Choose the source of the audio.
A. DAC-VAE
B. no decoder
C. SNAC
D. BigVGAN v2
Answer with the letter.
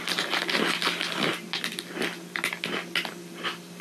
B